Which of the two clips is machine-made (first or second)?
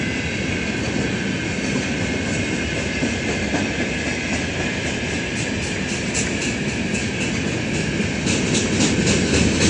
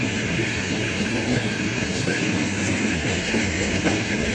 second